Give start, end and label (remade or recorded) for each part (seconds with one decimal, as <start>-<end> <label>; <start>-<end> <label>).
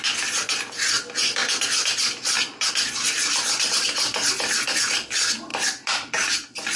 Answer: 0.0-6.8 recorded